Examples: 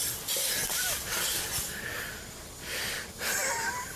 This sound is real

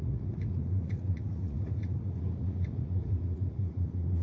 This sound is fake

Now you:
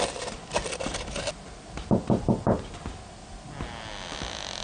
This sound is real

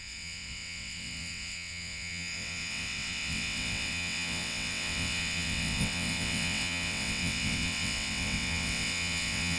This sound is fake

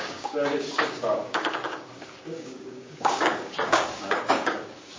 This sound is fake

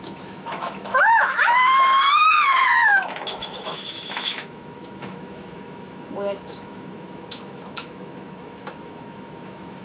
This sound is fake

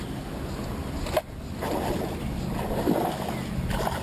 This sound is real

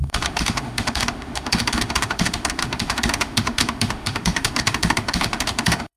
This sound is fake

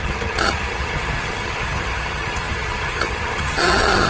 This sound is fake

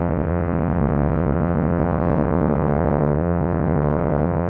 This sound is fake